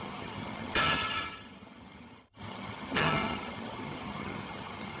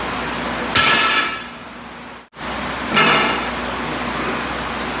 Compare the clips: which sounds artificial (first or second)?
first